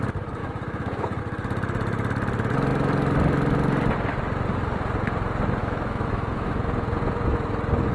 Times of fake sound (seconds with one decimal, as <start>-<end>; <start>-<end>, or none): 0.4-1.2; 5.6-6.6